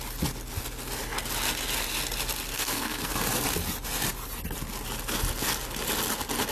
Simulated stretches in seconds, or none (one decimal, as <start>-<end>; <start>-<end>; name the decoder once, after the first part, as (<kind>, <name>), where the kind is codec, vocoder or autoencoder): 2.5-3.1 (codec, SNAC)